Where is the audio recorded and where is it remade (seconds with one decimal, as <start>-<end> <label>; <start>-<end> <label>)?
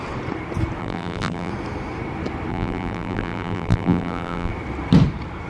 0.0-0.8 recorded; 0.8-1.5 remade; 1.5-2.5 recorded; 2.5-4.5 remade; 4.5-5.5 recorded